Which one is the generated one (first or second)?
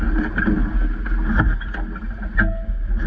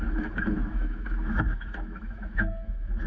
second